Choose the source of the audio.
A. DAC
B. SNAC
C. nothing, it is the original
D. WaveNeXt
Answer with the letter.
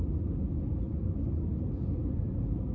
C